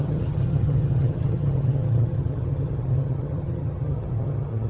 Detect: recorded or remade remade